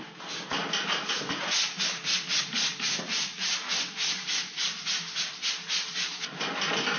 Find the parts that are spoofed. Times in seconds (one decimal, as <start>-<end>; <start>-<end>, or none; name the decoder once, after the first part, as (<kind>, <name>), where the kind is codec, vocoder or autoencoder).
0.6-1.5 (vocoder, BigVGAN v2); 3.3-5.2; 5.9-6.5